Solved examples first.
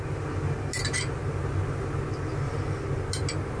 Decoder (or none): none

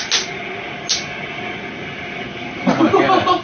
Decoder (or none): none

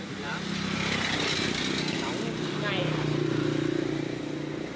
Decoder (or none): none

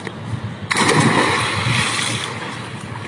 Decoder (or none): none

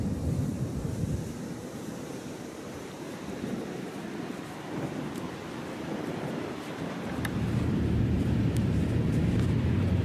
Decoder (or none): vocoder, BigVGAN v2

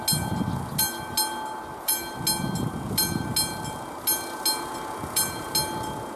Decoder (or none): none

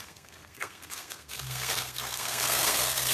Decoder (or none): codec, SNAC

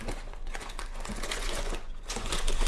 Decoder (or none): vocoder, Vocos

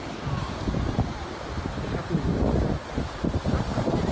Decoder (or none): none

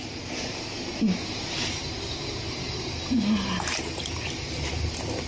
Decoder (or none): none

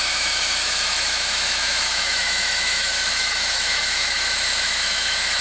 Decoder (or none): autoencoder, DAC-VAE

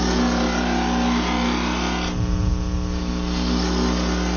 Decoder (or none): none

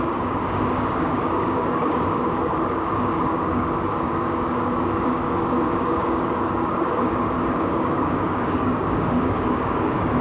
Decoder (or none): codec, DAC